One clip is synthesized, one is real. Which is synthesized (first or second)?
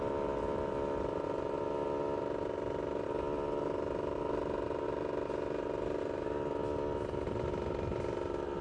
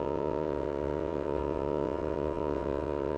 second